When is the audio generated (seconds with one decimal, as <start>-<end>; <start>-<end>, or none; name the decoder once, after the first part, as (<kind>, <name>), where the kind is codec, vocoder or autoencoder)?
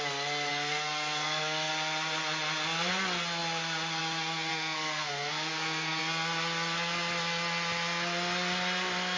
0.5-1.7 (codec, SNAC); 4.5-6.0